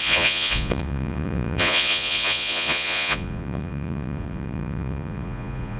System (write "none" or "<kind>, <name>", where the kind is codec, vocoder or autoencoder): vocoder, Vocos